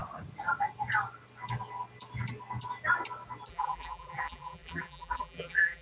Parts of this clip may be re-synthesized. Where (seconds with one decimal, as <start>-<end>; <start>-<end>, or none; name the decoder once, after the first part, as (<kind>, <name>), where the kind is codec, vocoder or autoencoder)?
3.5-5.8 (vocoder, BigVGAN v2)